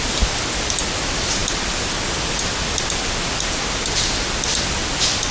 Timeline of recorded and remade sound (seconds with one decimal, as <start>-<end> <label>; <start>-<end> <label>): 0.0-5.3 recorded